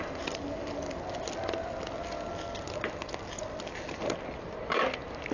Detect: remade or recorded recorded